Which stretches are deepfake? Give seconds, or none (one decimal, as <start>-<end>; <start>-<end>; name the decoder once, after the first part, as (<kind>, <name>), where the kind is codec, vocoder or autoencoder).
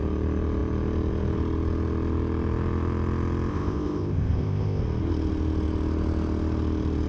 3.5-4.8 (codec, ZipCodec)